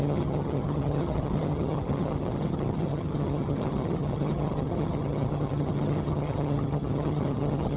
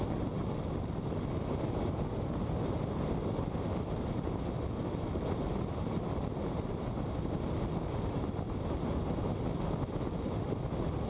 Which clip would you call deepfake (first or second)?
first